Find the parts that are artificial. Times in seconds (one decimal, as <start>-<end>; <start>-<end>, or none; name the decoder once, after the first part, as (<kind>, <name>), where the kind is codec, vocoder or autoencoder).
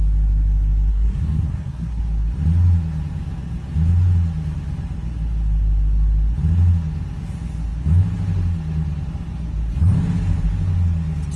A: 0.9-2.0 (codec, SNAC)